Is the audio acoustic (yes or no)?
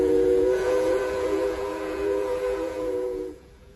no